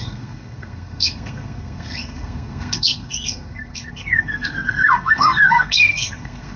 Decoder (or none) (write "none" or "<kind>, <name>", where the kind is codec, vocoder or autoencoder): codec, SNAC